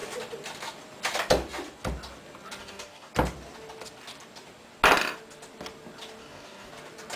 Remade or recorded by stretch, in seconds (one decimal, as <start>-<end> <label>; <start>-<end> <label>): 0.0-2.6 recorded; 2.6-3.1 remade; 3.1-6.2 recorded; 6.2-6.7 remade; 6.7-7.2 recorded